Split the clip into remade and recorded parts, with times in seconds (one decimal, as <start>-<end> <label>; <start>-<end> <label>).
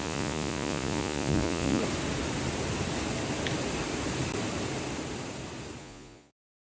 0.0-1.8 remade; 1.8-5.8 recorded; 5.8-6.6 remade